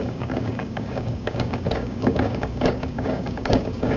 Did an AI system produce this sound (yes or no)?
yes